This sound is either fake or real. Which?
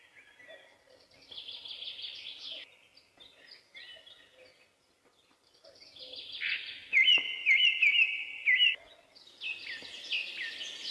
real